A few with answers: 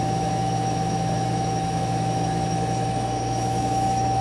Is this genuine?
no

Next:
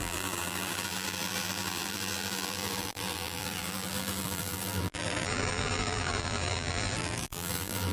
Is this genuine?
no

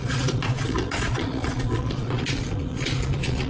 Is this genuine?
no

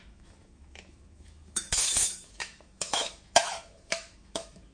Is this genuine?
no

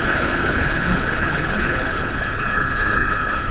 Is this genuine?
no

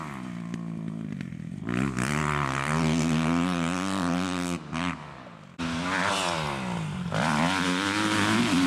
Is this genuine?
yes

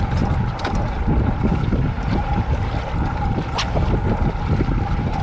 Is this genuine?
yes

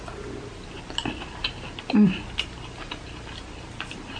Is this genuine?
yes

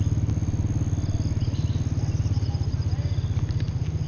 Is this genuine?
yes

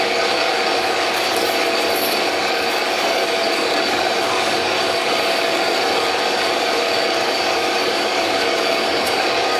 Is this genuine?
no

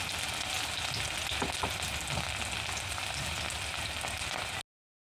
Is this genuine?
yes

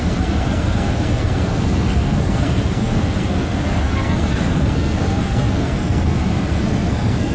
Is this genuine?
no